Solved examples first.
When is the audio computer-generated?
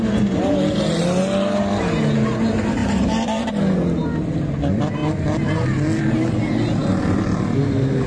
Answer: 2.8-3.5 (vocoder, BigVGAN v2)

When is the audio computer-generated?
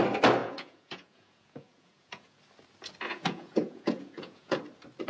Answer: 0.4-2.4 (vocoder, Vocos); 3.1-4.6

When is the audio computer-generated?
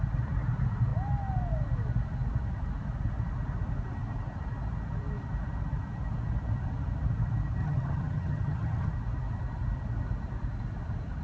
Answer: 7.6-8.9 (vocoder, HiFi-GAN)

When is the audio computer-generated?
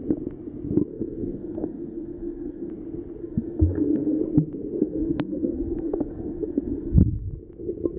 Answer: 0.9-2.7 (codec, SNAC); 3.2-4.2; 4.8-7.3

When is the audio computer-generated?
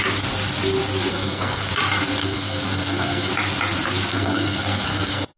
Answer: 1.1-1.7 (codec, SNAC); 2.2-3.3; 4.1-5.4